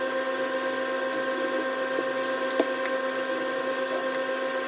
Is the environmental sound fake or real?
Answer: real